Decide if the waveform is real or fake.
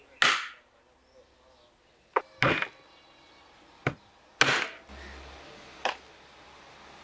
real